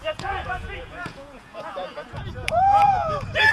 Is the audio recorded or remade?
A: remade